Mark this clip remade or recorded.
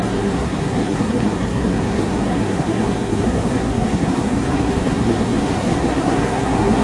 remade